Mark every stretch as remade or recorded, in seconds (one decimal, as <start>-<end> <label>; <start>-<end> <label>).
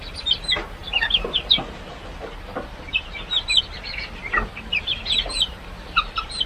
0.0-2.5 recorded; 2.5-6.5 remade